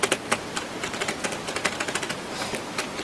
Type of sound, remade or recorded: recorded